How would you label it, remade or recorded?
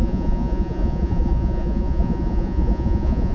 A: remade